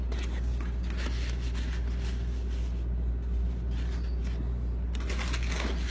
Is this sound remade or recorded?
recorded